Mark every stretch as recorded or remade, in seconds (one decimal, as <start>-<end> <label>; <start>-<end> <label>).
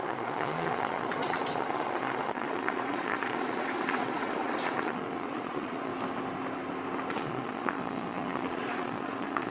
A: 0.0-5.9 remade; 5.9-7.1 recorded; 7.1-9.5 remade